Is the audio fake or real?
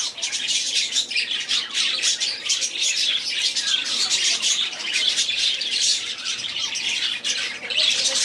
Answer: fake